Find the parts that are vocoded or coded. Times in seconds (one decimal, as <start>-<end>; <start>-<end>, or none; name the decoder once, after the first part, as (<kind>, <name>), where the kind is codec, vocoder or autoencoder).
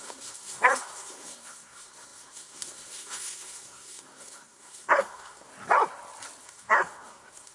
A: 0.0-5.5 (codec, SNAC); 6.4-7.5